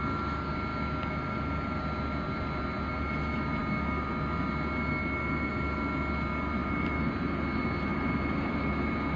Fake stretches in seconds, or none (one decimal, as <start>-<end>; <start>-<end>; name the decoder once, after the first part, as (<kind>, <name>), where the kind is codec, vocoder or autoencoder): 6.6-7.3 (vocoder, BigVGAN v2); 7.9-8.6